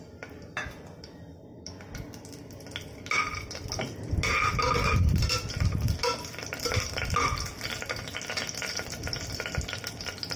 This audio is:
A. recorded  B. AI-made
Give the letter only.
A